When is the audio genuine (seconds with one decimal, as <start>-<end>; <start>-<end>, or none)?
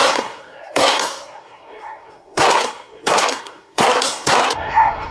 none